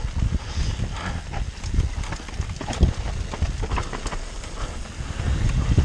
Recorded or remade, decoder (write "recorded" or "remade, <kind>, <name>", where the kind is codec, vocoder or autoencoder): recorded